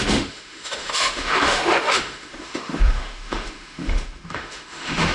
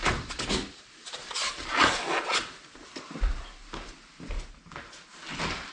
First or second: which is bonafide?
second